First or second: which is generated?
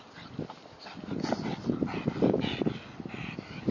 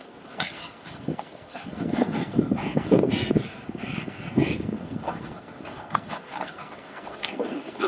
second